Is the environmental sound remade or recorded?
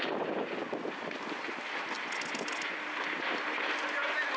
recorded